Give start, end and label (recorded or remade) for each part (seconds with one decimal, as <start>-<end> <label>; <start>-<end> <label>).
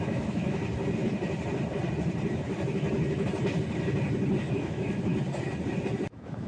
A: 0.0-0.6 remade; 0.6-4.5 recorded; 4.5-5.1 remade; 5.1-6.1 recorded; 6.1-6.5 remade